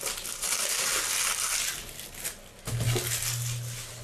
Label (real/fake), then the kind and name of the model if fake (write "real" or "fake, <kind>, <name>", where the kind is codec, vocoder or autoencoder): real